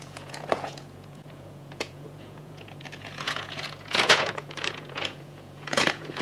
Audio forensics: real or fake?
fake